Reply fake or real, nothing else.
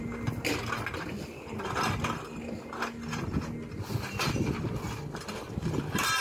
real